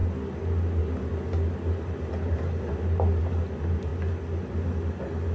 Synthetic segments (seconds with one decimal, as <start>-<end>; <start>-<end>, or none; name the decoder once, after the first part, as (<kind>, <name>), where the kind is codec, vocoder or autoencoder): none